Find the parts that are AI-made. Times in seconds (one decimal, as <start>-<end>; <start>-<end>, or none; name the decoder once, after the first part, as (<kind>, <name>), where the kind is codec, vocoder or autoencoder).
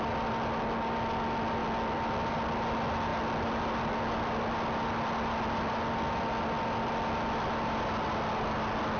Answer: none